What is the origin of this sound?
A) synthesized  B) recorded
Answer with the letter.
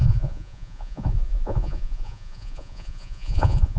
A